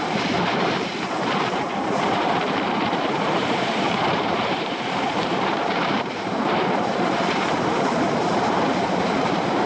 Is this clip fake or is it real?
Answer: fake